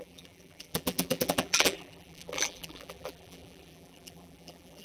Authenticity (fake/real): fake